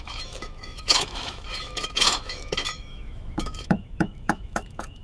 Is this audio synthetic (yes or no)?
yes